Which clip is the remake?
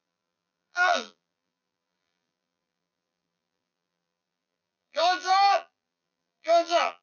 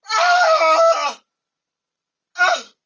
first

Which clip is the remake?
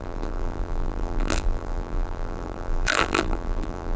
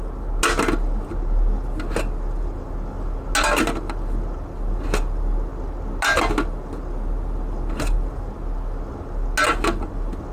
first